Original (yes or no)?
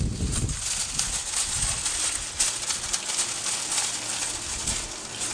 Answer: yes